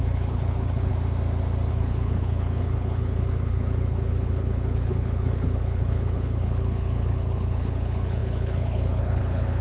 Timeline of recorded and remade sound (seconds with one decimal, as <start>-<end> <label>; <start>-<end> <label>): 0.0-0.9 remade; 0.9-1.7 recorded; 1.7-9.6 remade